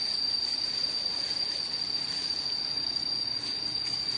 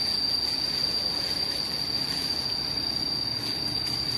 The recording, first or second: second